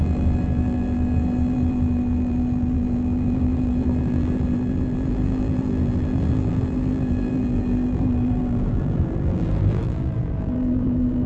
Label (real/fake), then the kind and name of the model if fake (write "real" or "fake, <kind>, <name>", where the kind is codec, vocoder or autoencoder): fake, vocoder, BigVGAN v2